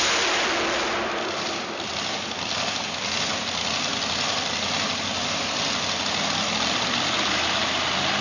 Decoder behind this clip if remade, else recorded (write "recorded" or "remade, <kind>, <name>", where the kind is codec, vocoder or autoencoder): recorded